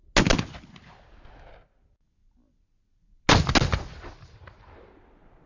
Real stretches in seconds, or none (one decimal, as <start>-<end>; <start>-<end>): 0.0-5.5